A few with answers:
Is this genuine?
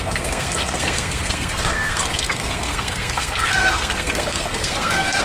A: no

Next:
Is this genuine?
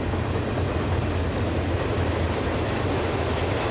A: yes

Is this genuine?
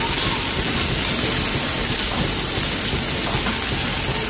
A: yes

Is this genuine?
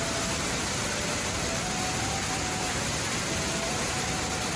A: yes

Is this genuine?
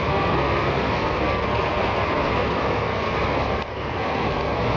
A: no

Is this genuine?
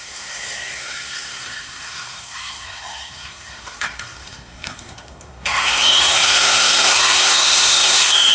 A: no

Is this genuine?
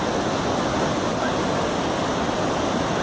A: yes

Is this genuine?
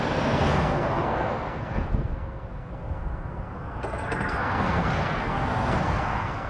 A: no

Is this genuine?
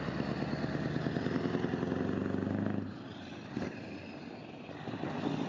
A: yes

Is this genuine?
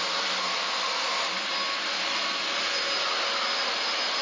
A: yes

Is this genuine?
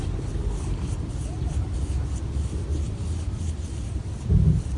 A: yes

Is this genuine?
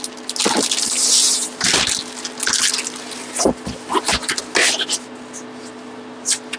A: yes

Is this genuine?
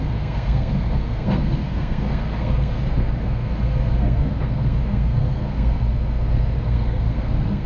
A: no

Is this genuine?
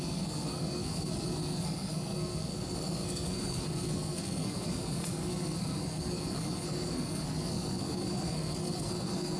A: no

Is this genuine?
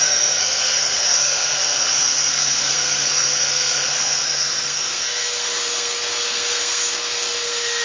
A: no